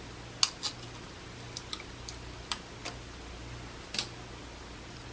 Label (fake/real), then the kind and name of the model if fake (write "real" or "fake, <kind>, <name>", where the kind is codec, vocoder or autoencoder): real